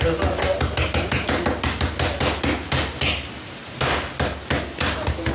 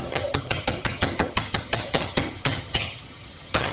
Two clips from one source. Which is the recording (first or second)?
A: first